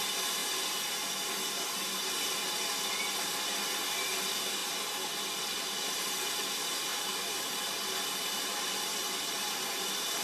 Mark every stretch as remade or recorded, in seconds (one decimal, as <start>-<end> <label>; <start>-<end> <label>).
0.0-10.2 recorded

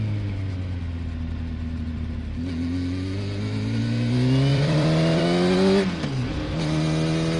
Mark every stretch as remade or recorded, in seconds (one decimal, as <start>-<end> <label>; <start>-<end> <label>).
0.0-4.5 recorded; 4.5-5.2 remade; 5.2-7.4 recorded

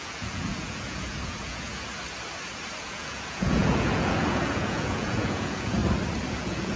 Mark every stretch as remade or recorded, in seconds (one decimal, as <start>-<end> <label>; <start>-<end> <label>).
0.0-1.7 remade; 1.7-2.8 recorded; 2.8-5.8 remade; 5.8-6.3 recorded; 6.3-6.8 remade

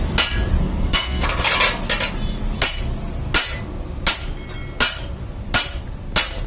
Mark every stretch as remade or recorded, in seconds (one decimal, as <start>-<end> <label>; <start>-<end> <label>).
0.0-0.6 recorded; 0.6-1.5 remade; 1.5-6.5 recorded

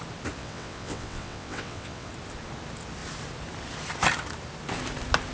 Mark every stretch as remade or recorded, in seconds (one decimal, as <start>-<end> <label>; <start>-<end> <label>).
0.0-0.4 recorded; 0.4-2.1 remade; 2.1-5.3 recorded

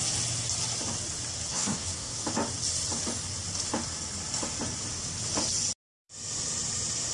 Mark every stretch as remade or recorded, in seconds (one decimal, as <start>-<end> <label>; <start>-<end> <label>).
0.0-1.5 recorded; 1.5-2.2 remade; 2.2-7.1 recorded